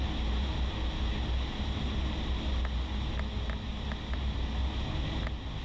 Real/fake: real